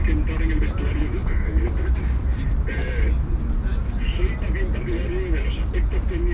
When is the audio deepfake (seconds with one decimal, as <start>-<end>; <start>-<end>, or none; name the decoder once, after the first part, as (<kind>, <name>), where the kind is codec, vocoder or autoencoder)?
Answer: 1.0-1.9 (codec, DAC)